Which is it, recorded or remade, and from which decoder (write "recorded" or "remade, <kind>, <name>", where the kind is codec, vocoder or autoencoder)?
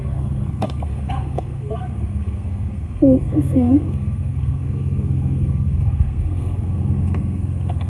remade, codec, SNAC